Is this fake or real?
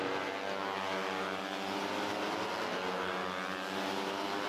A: real